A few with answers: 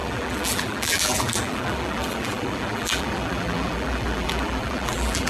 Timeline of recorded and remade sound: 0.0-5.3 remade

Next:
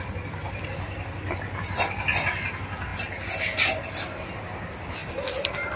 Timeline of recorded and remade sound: 0.0-5.8 recorded